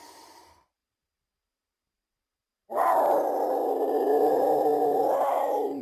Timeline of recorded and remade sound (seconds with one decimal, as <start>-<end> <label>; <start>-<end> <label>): 0.0-5.8 remade